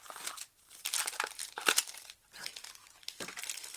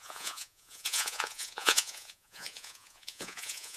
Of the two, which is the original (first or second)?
first